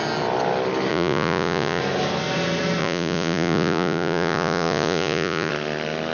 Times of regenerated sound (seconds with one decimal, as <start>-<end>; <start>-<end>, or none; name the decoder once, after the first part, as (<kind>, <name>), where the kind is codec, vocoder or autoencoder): 0.9-1.8 (vocoder, Vocos); 2.8-5.5